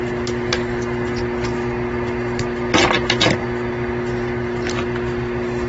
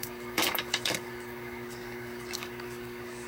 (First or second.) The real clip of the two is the first